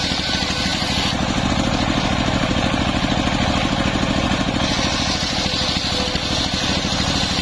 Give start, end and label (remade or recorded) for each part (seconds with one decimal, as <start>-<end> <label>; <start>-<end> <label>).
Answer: 0.0-7.4 recorded